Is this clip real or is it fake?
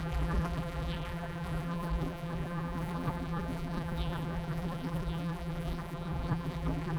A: fake